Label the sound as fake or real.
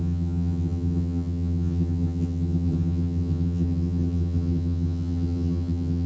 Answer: fake